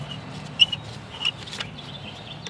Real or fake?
real